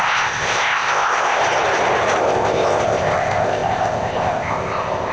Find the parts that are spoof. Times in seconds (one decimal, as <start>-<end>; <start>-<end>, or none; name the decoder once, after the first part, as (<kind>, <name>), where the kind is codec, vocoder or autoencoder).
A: 0.0-1.4 (codec, ZipCodec); 2.2-5.1